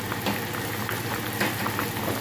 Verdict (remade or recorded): recorded